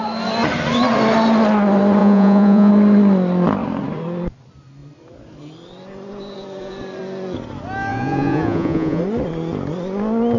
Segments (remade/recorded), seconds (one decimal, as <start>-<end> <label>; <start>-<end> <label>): 0.0-2.0 recorded; 2.0-2.7 remade; 2.7-7.9 recorded; 7.9-9.0 remade; 9.0-10.4 recorded